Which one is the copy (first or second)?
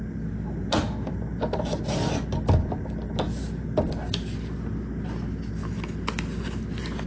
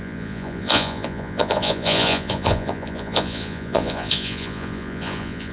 second